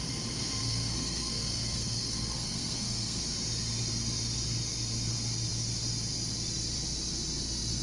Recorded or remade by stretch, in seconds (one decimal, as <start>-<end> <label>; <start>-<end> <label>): 0.0-0.6 recorded; 0.6-3.2 remade; 3.2-7.8 recorded